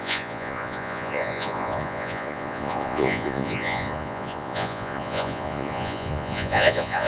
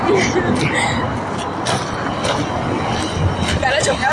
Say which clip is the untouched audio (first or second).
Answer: second